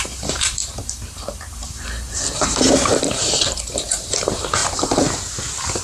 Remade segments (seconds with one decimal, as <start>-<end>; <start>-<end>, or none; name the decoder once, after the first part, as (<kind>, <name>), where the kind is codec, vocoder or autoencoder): 0.0-4.6 (vocoder, BigVGAN v2)